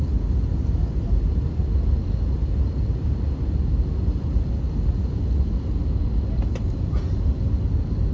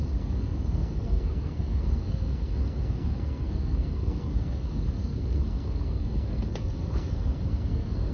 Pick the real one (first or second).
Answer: first